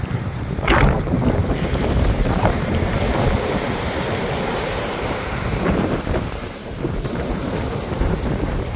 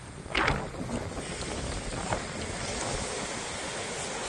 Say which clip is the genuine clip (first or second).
second